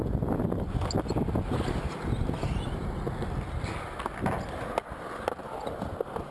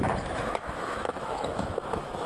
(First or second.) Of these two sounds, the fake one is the second